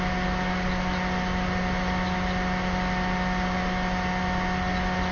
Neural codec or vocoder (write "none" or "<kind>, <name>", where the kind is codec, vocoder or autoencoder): none